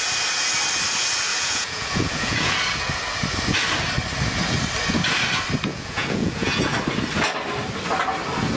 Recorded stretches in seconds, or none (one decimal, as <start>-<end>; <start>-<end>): 0.0-1.3; 2.6-5.7; 6.6-8.6